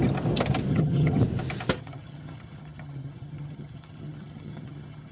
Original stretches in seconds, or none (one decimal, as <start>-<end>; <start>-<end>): 0.0-0.7; 1.2-1.8